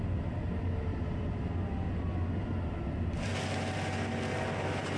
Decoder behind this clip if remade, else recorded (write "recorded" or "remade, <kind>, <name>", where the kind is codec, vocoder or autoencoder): recorded